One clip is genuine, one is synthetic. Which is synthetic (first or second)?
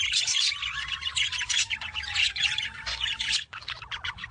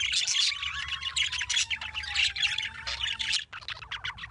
first